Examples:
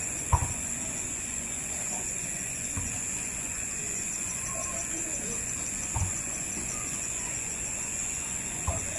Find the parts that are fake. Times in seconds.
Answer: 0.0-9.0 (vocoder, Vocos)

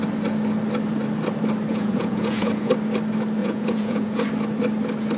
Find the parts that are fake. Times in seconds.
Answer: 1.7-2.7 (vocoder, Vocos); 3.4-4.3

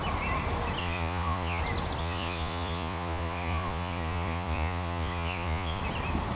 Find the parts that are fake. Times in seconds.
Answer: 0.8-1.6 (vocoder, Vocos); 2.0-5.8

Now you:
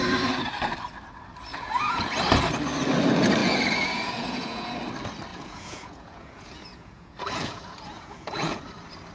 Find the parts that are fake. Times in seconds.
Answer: 1.5-2.1 (vocoder, Vocos); 3.4-4.7; 5.3-8.6